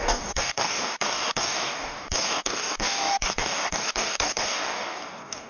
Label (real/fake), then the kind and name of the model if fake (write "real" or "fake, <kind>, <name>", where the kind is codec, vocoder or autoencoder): fake, codec, DAC